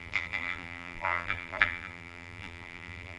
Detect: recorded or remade remade